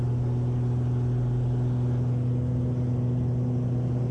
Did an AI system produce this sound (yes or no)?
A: no